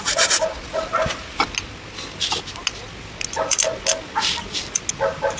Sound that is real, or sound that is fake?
real